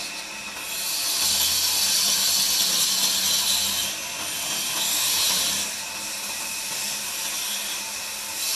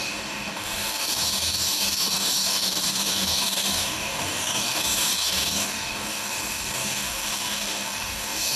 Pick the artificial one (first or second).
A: second